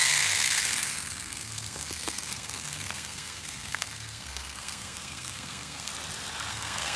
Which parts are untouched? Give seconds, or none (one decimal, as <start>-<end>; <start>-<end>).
5.9-6.5